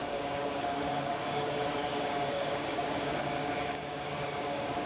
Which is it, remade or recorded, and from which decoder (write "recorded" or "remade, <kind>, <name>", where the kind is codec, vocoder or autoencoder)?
remade, codec, DAC